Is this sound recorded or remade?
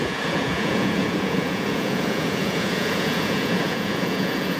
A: remade